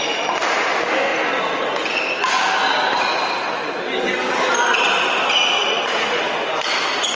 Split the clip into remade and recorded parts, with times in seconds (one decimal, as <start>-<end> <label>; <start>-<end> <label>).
0.0-4.2 recorded; 4.2-6.4 remade; 6.4-7.1 recorded